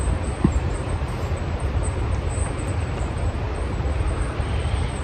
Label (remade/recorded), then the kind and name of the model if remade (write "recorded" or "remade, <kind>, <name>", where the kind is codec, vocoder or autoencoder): remade, vocoder, BigVGAN v2